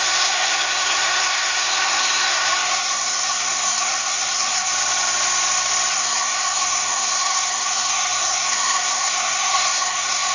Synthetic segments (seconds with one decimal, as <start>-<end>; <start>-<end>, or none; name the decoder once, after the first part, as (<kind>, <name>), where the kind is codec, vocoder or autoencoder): 0.0-4.7 (codec, SNAC); 5.9-10.3